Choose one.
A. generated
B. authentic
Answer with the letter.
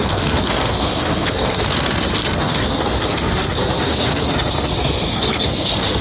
A